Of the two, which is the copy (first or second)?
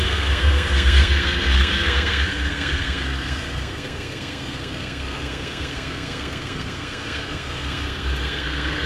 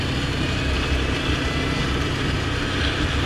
first